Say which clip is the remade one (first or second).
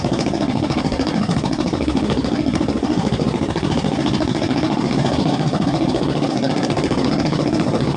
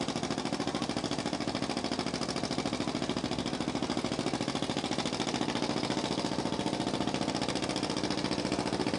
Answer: first